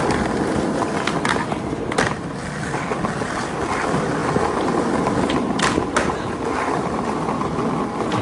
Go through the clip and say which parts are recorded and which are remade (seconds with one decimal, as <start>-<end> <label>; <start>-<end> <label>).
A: 0.0-8.2 recorded

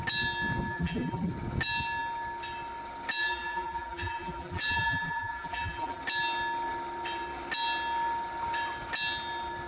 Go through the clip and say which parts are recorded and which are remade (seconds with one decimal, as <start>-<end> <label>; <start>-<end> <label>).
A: 0.0-0.7 recorded; 0.7-1.3 remade; 1.3-3.2 recorded; 3.2-6.0 remade; 6.0-9.7 recorded

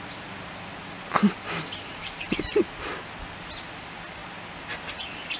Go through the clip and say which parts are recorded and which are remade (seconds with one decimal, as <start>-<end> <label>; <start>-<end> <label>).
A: 0.0-5.4 recorded

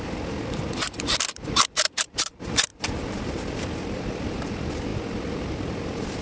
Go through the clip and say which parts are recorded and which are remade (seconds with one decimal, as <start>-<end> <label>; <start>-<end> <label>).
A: 0.0-6.2 remade

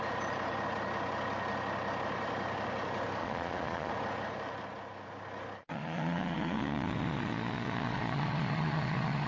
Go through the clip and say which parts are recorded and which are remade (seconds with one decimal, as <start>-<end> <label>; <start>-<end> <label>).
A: 0.0-3.2 recorded; 3.2-3.9 remade; 3.9-5.6 recorded; 5.6-9.3 remade

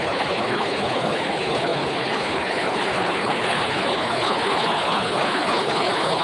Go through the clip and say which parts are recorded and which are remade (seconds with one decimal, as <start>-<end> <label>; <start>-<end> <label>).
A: 0.0-6.2 remade

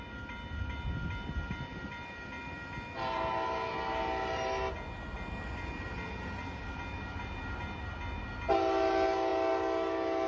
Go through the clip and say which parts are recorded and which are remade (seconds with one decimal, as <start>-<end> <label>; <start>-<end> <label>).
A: 0.0-10.3 recorded

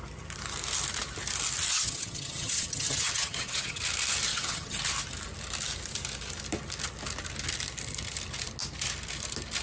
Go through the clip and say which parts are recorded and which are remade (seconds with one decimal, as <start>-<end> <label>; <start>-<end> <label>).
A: 0.0-1.7 recorded; 1.7-3.8 remade; 3.8-4.3 recorded; 4.3-4.8 remade; 4.8-9.6 recorded